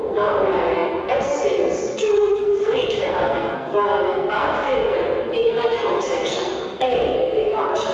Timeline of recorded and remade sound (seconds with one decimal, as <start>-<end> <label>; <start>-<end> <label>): 0.0-7.9 remade

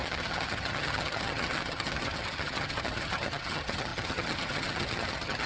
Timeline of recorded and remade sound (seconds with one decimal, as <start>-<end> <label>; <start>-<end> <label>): 0.0-5.5 remade

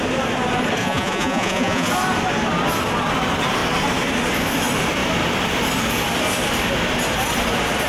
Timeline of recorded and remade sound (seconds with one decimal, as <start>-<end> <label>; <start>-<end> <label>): 0.0-0.8 recorded; 0.8-1.9 remade; 1.9-7.9 recorded

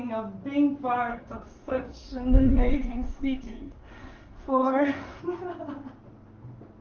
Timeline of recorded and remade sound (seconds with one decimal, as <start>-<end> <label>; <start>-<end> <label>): 0.0-1.1 recorded; 1.1-5.2 remade; 5.2-6.8 recorded

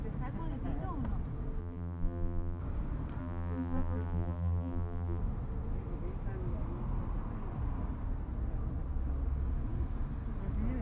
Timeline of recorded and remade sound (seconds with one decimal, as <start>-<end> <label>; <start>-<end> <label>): 0.0-1.6 recorded; 1.6-2.6 remade; 2.6-3.2 recorded; 3.2-5.2 remade; 5.2-10.8 recorded

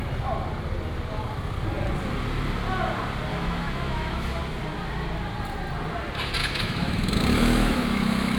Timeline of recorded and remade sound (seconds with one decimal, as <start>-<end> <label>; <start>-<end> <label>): 0.0-3.3 recorded; 3.3-4.4 remade; 4.4-6.4 recorded; 6.4-8.4 remade

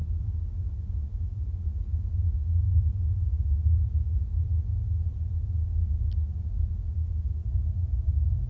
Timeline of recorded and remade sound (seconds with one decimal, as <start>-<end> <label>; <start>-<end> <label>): 0.0-8.5 recorded

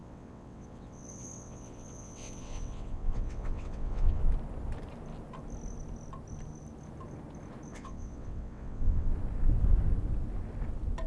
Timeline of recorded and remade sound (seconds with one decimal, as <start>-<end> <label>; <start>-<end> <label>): 0.0-4.2 remade; 4.2-7.7 recorded; 7.7-9.1 remade; 9.1-11.1 recorded